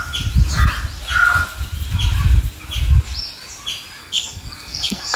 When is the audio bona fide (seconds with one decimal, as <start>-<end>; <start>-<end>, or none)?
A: 0.0-4.0